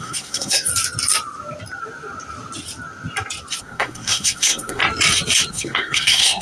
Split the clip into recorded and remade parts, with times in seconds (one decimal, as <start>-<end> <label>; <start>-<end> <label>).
0.0-0.7 remade; 0.7-3.6 recorded; 3.6-4.8 remade; 4.8-5.5 recorded; 5.5-6.4 remade

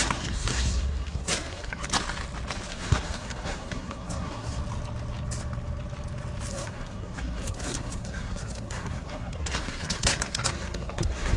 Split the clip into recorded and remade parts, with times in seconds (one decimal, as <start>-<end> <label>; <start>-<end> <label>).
0.0-1.8 remade; 1.8-2.7 recorded; 2.7-4.6 remade; 4.6-6.5 recorded; 6.5-11.4 remade

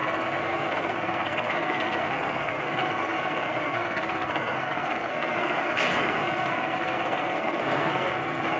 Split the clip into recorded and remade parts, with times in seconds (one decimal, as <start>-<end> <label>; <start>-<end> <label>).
0.0-8.6 remade

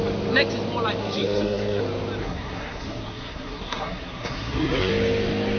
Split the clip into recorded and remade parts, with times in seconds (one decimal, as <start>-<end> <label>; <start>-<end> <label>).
0.0-1.0 recorded; 1.0-1.8 remade; 1.8-2.2 recorded; 2.2-4.9 remade; 4.9-5.6 recorded

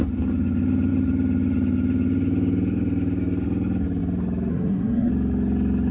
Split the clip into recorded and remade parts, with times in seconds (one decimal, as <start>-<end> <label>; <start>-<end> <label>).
0.0-4.5 recorded; 4.5-5.1 remade; 5.1-5.9 recorded